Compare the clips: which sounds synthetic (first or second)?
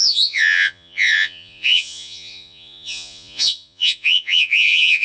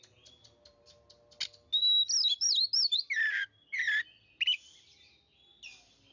first